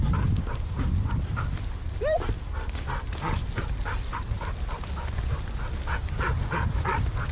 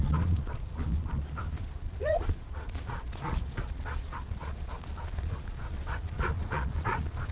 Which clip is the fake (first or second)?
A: second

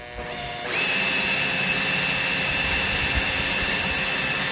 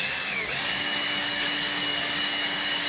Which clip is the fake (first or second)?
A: second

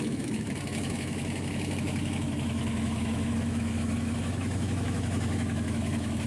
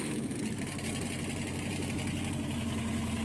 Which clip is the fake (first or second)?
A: first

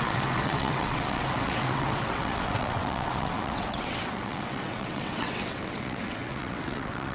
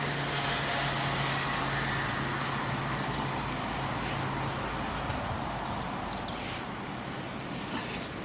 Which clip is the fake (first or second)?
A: first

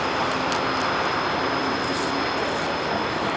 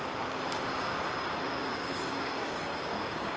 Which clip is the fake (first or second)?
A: second